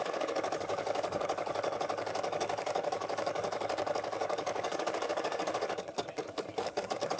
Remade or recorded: remade